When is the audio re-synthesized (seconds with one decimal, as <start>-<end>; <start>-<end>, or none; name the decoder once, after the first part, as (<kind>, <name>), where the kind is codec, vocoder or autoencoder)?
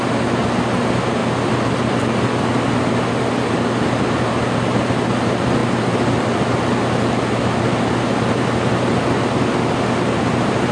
none